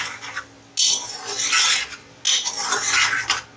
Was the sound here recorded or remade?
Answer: recorded